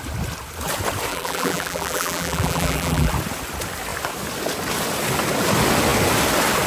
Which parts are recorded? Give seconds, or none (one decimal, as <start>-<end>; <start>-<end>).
0.0-1.1; 3.1-6.7